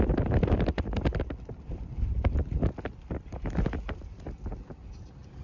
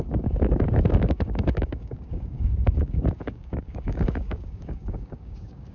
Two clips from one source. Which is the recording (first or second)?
first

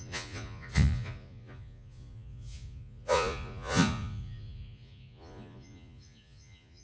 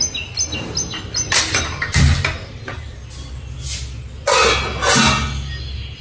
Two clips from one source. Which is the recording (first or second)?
second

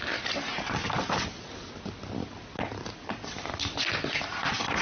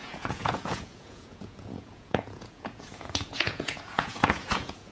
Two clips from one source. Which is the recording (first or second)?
first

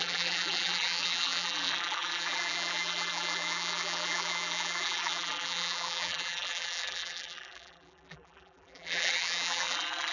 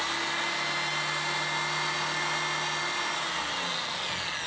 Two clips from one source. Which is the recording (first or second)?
second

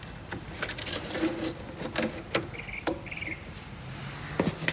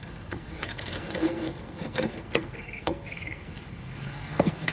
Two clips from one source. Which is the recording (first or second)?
first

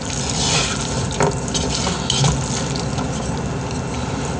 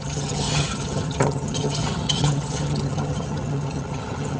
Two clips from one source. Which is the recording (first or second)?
first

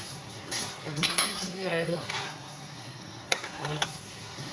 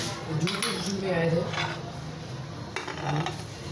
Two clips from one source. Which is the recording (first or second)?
second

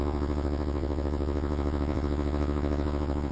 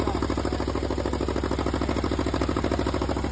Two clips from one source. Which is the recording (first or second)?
second